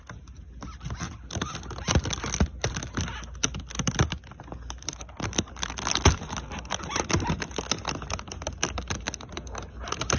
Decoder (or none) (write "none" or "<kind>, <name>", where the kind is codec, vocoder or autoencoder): none